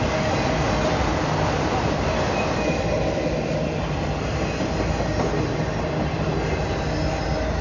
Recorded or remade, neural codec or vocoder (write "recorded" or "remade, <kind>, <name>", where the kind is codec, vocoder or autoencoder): recorded